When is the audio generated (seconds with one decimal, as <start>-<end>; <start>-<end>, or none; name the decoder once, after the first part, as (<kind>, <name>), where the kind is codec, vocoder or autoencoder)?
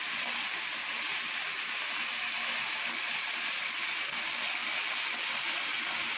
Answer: 4.6-5.8 (vocoder, BigVGAN v2)